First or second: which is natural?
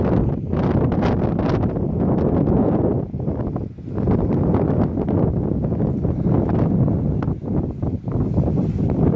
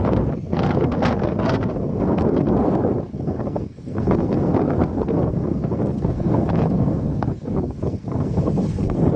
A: first